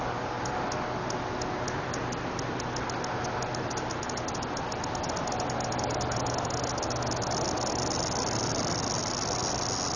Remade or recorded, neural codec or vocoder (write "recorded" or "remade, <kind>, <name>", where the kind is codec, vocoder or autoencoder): recorded